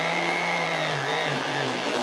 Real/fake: fake